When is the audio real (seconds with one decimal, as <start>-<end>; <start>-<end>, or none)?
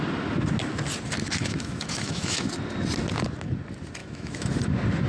0.0-1.4; 2.5-4.0; 4.5-5.1